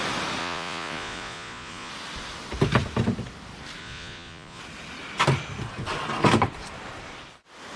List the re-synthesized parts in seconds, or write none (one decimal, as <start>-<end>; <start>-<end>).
0.4-1.9; 3.8-4.6

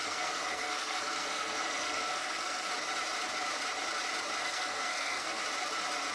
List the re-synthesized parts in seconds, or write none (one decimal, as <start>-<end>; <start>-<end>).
0.0-2.7; 4.4-5.4

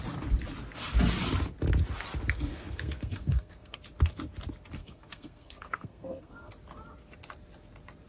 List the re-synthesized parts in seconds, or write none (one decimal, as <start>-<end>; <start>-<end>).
2.5-3.8; 4.8-6.5

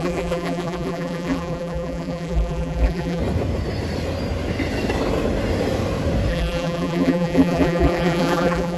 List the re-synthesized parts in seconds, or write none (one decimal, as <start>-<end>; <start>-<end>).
0.0-3.2; 6.3-8.8